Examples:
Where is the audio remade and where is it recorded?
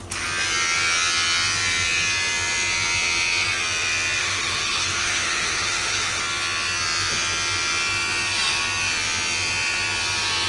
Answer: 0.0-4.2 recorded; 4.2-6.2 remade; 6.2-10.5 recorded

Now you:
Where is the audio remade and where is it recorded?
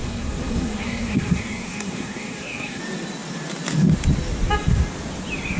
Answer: 0.0-2.8 remade; 2.8-5.6 recorded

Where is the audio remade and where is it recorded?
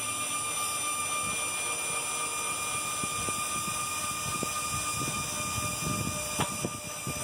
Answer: 0.0-7.2 recorded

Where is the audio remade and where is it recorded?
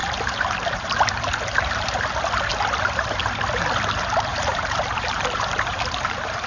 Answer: 0.0-2.1 remade; 2.1-2.5 recorded; 2.5-3.2 remade; 3.2-4.3 recorded; 4.3-6.5 remade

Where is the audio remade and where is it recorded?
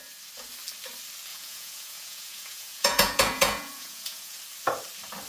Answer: 0.0-1.3 recorded; 1.3-4.4 remade; 4.4-5.3 recorded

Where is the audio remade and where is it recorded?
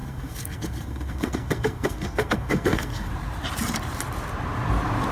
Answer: 0.0-3.1 remade; 3.1-5.1 recorded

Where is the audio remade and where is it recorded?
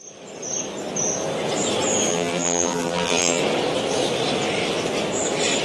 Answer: 0.0-2.1 recorded; 2.1-3.4 remade; 3.4-5.6 recorded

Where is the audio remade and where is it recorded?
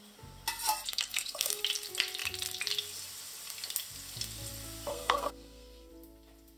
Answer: 0.0-0.9 recorded; 0.9-1.6 remade; 1.6-4.9 recorded; 4.9-5.9 remade; 5.9-6.6 recorded